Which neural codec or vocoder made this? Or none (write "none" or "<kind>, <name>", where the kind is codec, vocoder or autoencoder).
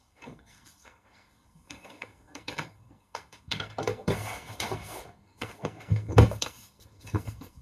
codec, SNAC